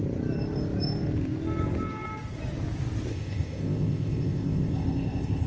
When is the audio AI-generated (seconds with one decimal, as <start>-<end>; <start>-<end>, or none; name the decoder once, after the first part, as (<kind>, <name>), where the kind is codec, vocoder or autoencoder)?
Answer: 3.1-5.5 (codec, ZipCodec)